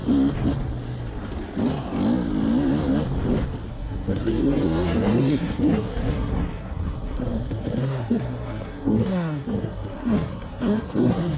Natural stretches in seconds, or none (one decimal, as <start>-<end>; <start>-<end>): 0.0-3.7